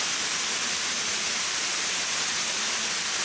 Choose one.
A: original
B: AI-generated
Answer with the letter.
A